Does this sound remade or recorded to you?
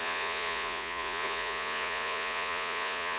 remade